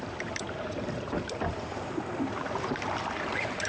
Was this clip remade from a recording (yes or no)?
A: yes